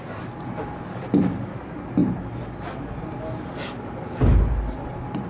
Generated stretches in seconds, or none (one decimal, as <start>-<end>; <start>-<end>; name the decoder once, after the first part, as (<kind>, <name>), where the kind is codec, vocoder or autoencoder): none